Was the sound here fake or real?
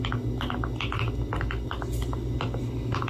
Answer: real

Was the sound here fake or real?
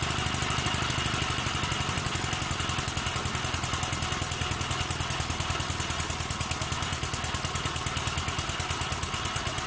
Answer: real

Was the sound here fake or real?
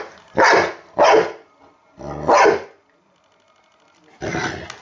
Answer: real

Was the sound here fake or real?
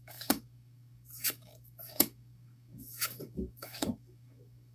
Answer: fake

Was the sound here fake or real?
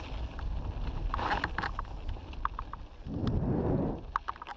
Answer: real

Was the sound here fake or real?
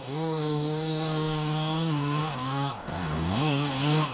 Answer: fake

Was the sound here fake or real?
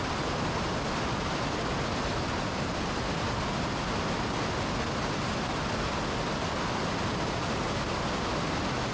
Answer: real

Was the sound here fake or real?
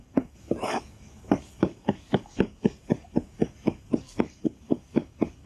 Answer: fake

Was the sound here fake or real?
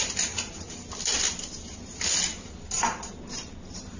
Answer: real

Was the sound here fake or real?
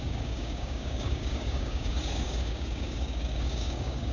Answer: fake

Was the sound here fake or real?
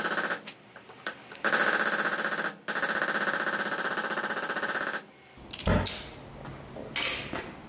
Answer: real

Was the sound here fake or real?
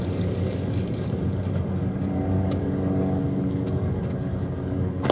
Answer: fake